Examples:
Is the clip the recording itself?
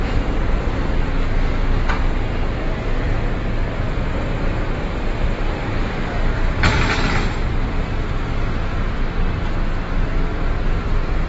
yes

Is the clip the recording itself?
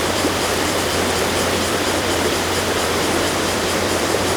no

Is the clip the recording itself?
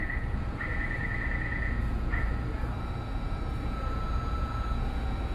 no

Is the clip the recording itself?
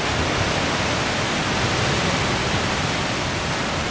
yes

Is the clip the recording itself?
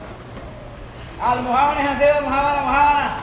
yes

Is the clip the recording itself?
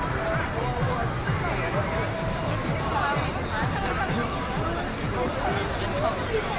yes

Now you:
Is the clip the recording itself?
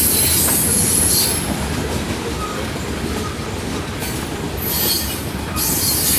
yes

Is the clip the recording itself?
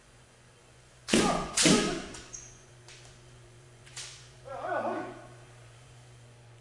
no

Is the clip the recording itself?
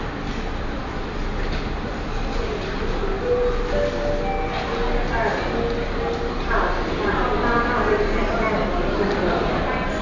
yes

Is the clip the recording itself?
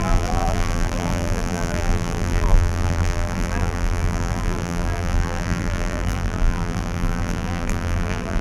no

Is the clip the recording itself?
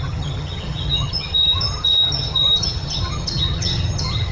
no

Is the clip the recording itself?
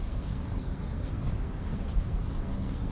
no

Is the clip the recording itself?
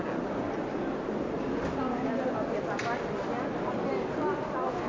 yes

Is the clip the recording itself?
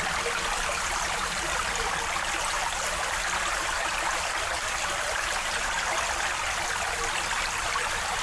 yes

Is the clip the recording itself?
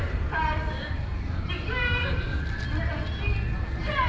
yes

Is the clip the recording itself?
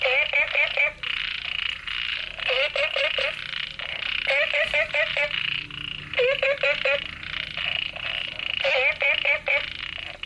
yes